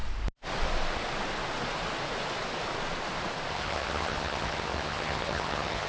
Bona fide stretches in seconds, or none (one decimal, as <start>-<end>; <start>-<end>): 0.0-3.5